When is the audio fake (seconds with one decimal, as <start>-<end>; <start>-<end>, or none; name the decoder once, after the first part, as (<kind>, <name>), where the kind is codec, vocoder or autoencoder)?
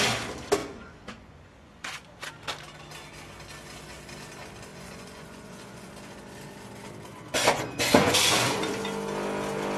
0.6-2.3 (vocoder, Vocos); 4.7-5.9; 7.1-8.6